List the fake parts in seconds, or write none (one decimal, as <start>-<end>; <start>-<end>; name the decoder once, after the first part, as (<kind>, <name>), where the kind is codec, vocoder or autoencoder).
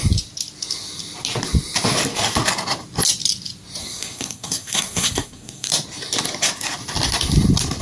3.8-5.7 (codec, SNAC)